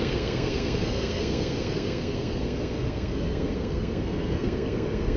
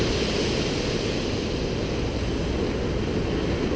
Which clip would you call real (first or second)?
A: second